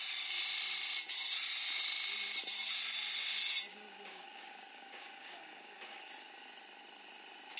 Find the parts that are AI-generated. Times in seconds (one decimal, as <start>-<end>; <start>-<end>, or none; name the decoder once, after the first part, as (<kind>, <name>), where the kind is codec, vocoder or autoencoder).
3.7-6.1 (codec, DAC)